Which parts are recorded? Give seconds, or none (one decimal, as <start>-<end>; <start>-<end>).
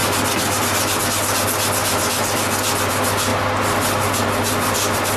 0.0-5.2